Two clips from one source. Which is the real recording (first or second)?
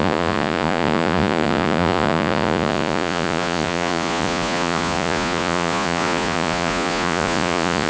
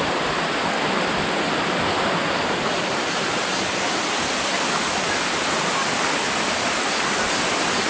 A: second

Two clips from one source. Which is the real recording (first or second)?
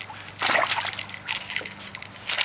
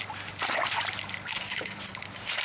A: first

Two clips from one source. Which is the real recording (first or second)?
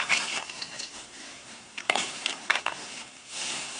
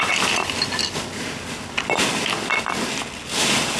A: second